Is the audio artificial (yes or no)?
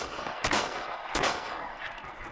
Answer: yes